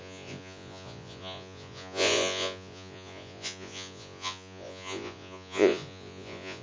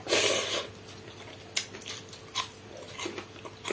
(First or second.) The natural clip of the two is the second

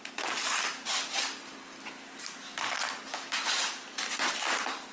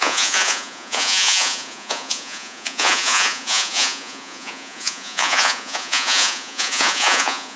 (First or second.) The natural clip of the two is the first